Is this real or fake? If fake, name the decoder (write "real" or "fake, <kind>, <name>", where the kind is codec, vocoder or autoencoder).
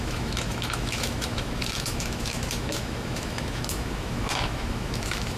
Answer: fake, autoencoder, DAC-VAE